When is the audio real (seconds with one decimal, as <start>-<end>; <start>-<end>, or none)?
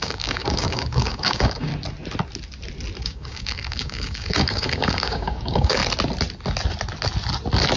1.7-3.0; 5.8-7.8